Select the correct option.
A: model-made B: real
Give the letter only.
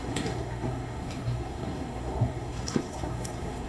A